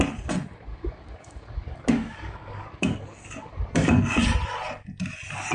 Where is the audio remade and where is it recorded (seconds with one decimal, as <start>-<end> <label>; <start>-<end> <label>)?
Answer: 0.0-0.7 recorded; 0.7-4.0 remade; 4.0-5.5 recorded